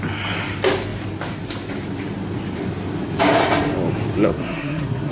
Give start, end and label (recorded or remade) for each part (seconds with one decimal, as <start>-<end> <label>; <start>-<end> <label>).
0.0-4.3 recorded; 4.3-5.1 remade